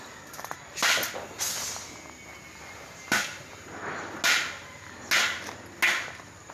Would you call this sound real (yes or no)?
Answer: yes